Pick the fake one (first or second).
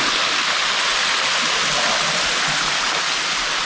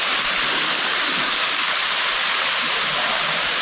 second